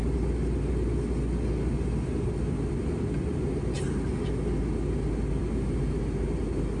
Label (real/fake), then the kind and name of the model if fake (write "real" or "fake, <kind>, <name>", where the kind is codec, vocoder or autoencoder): real